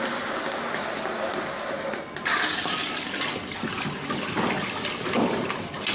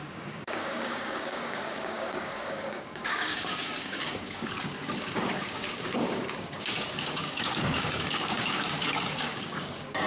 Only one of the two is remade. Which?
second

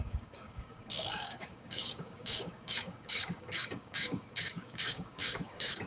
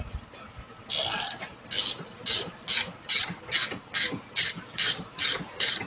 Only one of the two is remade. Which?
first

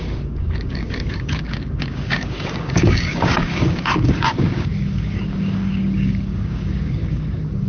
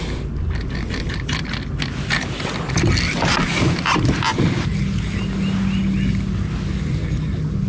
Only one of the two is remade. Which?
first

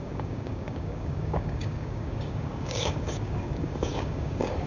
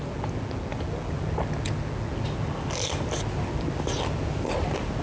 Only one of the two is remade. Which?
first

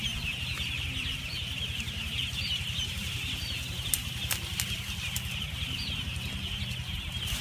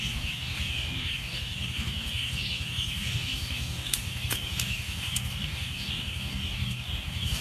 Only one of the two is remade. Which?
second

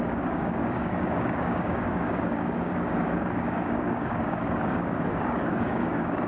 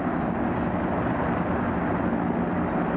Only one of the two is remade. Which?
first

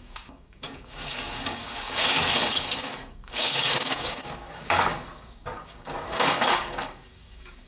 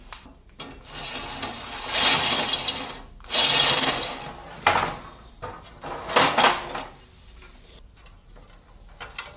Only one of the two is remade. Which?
first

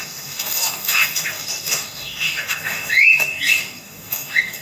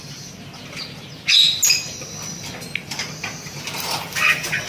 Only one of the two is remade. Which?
first